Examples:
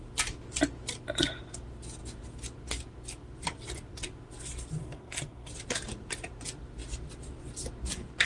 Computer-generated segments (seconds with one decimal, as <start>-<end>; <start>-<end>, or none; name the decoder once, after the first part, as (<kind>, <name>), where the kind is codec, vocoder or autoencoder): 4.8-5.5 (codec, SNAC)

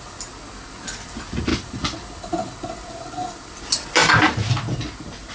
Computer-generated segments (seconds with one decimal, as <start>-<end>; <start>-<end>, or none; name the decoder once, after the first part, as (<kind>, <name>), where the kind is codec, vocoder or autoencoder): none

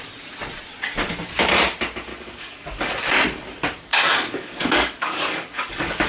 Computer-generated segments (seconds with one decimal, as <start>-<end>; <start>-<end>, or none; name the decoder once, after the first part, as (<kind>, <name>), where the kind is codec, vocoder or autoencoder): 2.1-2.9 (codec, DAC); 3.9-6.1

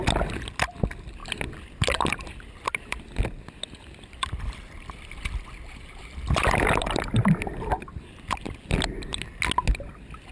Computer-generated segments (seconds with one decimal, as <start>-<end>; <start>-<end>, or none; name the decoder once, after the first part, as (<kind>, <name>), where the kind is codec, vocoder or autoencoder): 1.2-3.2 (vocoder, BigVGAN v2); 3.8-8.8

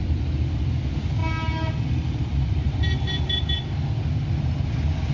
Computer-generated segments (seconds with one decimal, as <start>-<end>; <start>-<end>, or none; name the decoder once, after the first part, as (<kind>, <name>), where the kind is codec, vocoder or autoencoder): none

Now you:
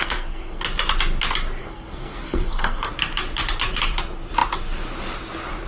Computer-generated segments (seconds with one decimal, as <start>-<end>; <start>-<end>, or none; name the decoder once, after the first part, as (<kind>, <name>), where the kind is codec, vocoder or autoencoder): 0.0-0.6 (codec, SNAC); 1.6-2.9

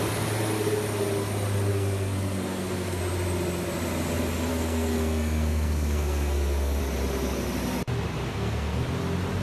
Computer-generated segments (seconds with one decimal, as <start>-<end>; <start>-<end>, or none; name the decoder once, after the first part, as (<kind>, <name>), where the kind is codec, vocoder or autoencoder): 1.7-3.0 (codec, SNAC); 4.5-6.8; 8.3-8.9